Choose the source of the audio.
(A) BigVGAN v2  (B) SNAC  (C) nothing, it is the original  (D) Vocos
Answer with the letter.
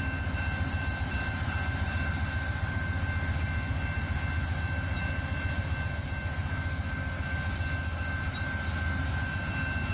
C